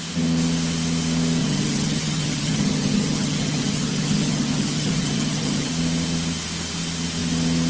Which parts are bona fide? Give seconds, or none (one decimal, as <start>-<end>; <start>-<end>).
0.0-1.4; 5.7-7.7